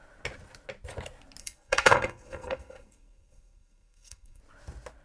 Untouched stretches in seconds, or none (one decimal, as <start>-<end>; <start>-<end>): 0.0-1.4; 4.4-5.0